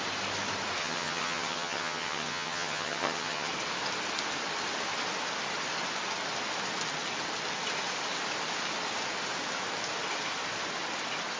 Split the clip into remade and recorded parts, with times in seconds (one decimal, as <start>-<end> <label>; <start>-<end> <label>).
0.0-0.8 recorded; 0.8-3.5 remade; 3.5-11.4 recorded